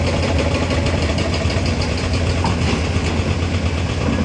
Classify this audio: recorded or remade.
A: recorded